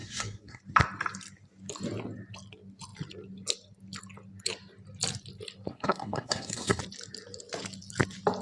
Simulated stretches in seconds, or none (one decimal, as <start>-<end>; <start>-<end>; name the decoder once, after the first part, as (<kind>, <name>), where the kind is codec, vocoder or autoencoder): 0.0-0.6 (codec, SNAC); 5.7-6.8